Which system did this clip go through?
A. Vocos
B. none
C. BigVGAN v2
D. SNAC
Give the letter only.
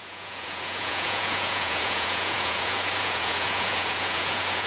A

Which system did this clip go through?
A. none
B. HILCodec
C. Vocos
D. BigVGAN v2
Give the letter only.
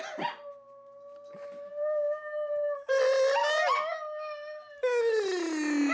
A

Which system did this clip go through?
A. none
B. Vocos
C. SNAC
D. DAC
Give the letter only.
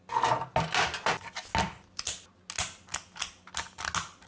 A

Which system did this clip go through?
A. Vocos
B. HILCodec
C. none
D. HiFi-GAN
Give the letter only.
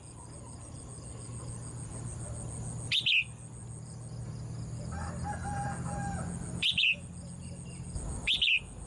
C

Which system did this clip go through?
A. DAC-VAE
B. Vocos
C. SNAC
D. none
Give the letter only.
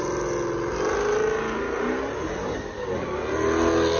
D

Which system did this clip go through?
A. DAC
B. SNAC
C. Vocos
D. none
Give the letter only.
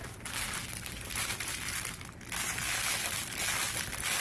D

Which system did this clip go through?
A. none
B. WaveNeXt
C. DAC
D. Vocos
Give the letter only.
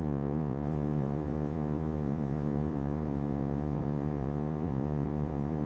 D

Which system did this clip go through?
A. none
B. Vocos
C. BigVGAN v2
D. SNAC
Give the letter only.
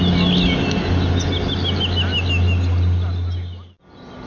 A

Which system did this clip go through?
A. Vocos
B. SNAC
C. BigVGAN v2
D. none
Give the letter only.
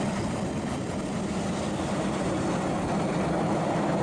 D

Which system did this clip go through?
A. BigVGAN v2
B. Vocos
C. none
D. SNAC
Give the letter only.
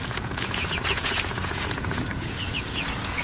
B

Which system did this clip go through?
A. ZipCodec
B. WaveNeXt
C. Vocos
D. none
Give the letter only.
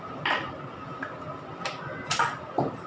D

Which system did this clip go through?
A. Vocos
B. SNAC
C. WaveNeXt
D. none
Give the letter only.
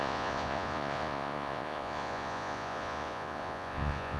A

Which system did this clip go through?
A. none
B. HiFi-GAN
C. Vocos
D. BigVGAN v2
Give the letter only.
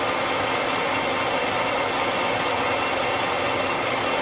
A